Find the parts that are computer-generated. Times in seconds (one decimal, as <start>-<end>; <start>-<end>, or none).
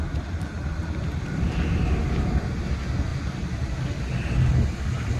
none